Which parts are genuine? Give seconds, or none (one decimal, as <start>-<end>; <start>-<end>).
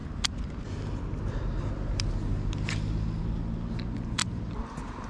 0.0-4.2